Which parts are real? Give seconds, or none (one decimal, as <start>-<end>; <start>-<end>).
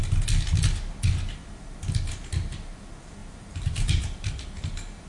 0.0-3.2; 4.0-5.1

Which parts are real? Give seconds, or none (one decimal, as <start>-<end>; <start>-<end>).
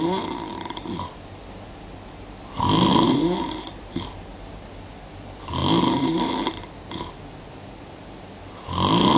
0.0-9.2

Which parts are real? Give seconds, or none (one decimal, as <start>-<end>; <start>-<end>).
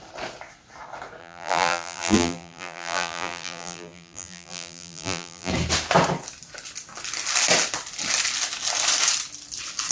0.0-1.2; 5.5-9.9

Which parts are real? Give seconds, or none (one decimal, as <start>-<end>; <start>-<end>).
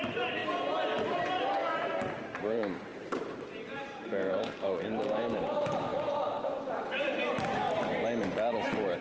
0.4-2.1; 5.9-6.9